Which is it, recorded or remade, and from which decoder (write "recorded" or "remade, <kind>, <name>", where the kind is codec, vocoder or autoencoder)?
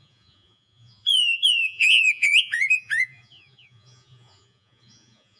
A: remade, vocoder, Vocos